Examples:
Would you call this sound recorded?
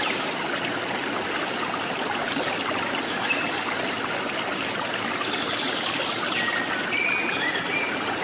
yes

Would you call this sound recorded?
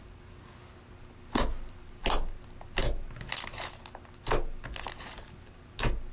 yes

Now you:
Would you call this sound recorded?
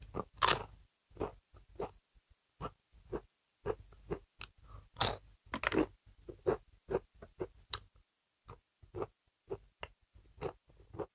yes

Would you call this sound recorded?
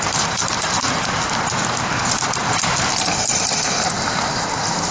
no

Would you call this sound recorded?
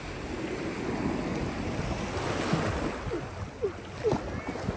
yes